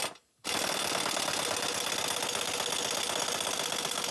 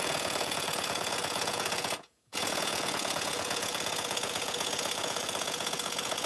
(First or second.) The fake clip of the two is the second